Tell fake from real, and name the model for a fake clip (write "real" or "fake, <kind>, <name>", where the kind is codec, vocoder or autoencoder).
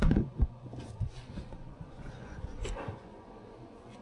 fake, vocoder, Vocos